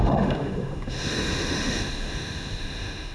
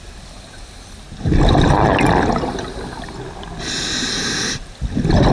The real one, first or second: second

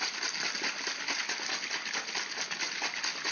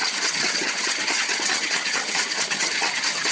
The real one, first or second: first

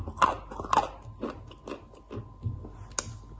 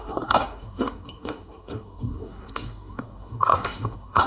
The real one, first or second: first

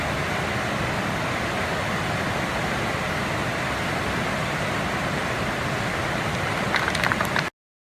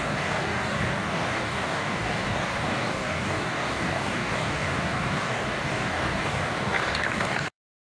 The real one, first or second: first